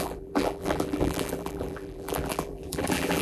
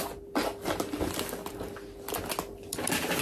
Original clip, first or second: second